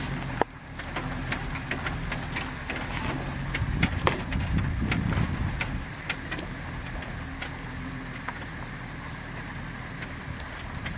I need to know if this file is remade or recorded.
recorded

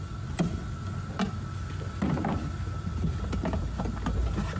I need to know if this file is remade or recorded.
recorded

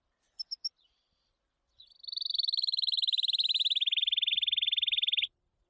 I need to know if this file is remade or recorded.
recorded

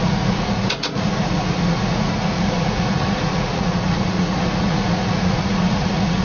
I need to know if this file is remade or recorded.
remade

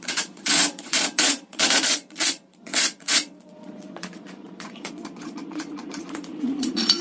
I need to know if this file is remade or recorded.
remade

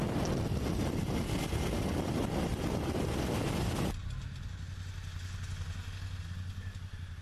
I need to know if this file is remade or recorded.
recorded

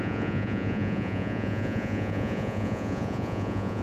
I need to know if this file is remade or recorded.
remade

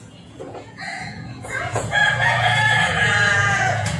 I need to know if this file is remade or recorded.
remade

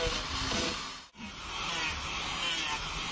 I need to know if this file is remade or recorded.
recorded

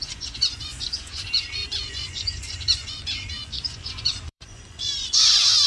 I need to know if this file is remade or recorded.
remade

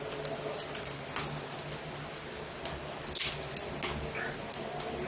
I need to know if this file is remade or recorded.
recorded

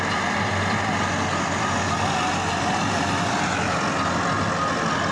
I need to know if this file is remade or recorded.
recorded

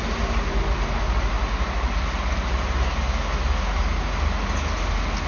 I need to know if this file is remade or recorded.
recorded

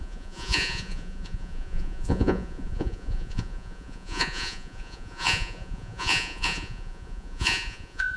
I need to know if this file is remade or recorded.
remade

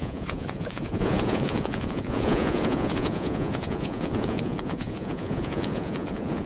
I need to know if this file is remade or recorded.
remade